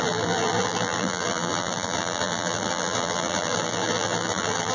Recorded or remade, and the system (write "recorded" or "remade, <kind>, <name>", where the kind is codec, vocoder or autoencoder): remade, vocoder, BigVGAN v2